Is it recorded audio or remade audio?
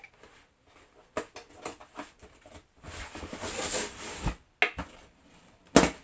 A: recorded